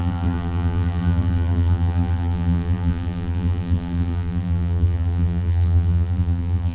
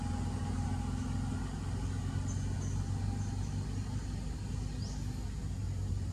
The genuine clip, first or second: second